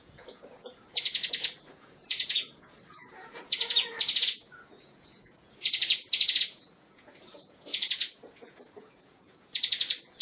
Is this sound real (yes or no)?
no